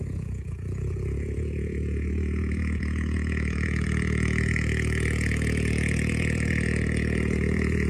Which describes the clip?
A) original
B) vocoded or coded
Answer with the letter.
B